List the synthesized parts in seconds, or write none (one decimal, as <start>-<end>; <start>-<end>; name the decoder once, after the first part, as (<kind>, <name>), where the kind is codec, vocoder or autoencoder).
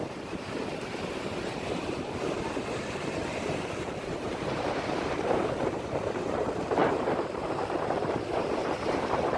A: 0.0-9.4 (vocoder, BigVGAN v2)